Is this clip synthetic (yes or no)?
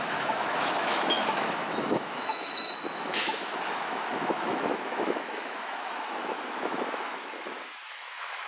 yes